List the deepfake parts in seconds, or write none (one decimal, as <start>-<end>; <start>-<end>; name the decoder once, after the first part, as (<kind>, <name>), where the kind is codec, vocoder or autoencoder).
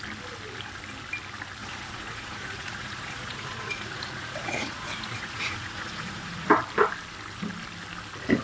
1.6-6.5 (vocoder, Vocos)